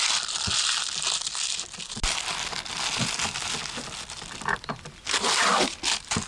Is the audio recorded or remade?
recorded